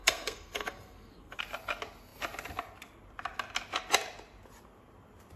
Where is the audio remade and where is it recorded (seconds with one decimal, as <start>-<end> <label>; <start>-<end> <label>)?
0.0-1.4 remade; 1.4-5.4 recorded